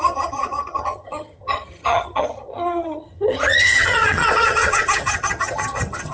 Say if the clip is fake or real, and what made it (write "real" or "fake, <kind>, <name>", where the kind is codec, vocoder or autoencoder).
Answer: fake, vocoder, HiFi-GAN